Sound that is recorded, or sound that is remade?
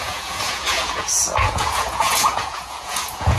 remade